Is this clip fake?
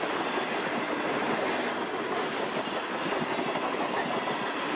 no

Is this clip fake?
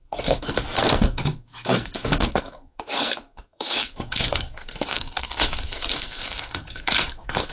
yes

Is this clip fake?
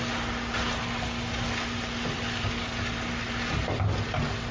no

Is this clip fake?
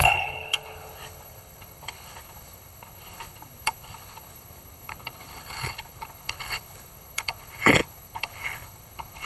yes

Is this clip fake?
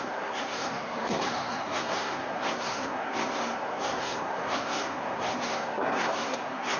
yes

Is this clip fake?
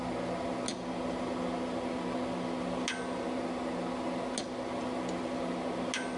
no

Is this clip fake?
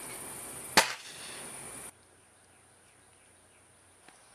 no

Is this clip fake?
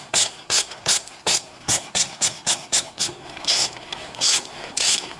yes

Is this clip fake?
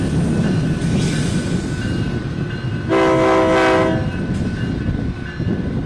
no